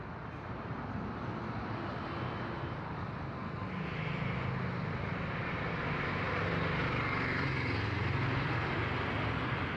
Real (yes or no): yes